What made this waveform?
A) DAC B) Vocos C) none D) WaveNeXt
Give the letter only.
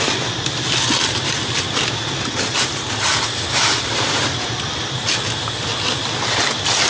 C